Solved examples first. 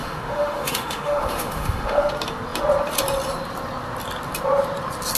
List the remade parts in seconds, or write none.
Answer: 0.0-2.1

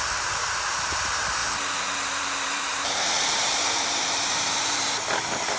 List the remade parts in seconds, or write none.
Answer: 1.4-4.8

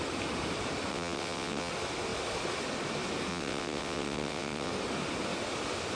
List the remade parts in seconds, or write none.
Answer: 0.9-1.7; 3.3-4.7

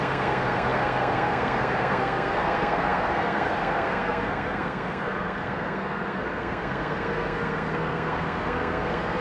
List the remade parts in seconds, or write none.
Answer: 0.0-9.2